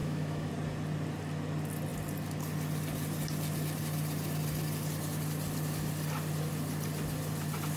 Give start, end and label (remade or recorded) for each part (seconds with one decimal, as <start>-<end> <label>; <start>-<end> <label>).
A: 0.0-0.5 remade; 0.5-7.8 recorded